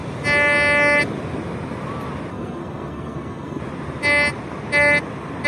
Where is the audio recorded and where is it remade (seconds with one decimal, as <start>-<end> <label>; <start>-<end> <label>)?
0.0-2.3 recorded; 2.3-3.6 remade; 3.6-5.5 recorded